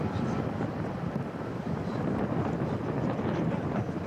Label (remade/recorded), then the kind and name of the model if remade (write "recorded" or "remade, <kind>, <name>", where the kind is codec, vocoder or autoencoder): recorded